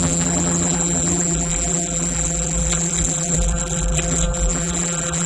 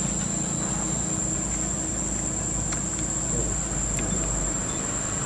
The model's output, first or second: first